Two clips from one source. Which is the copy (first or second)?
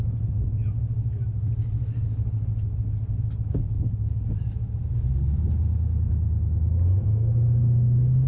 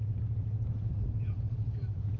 second